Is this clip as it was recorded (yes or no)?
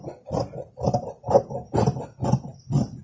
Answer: yes